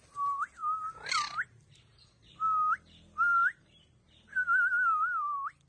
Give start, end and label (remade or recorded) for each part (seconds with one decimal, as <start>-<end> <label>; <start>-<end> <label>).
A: 0.0-5.7 recorded